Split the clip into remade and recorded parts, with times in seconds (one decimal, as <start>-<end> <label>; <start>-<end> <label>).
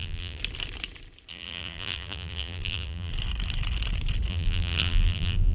0.0-0.4 remade; 0.4-1.3 recorded; 1.3-3.1 remade; 3.1-4.3 recorded; 4.3-5.5 remade